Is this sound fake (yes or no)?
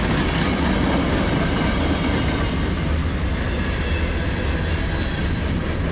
no